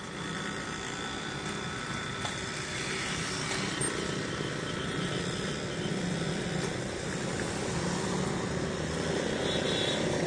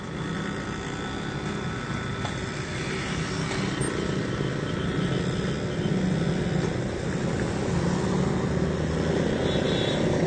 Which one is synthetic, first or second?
first